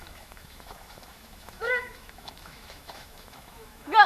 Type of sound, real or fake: fake